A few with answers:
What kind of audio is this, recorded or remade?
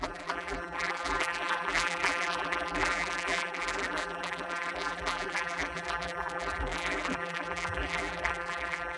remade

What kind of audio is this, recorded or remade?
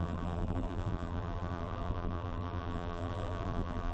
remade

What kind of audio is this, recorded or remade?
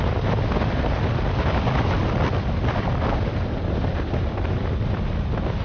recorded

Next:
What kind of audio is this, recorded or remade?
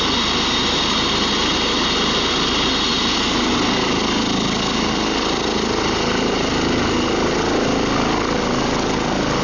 recorded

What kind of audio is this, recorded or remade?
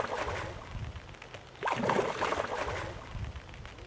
remade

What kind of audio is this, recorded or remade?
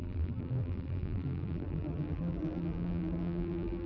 remade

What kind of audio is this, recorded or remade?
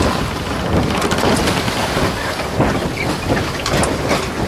recorded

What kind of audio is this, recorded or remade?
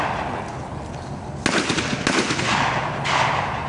recorded